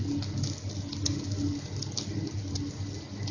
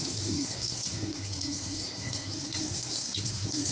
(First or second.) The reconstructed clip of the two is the second